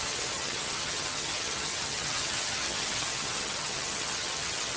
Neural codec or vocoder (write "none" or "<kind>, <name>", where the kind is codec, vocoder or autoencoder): vocoder, HiFi-GAN